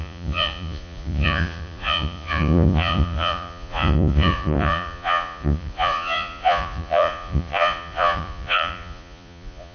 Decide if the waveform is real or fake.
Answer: fake